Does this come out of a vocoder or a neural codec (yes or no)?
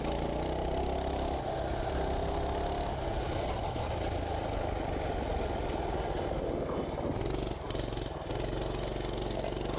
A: no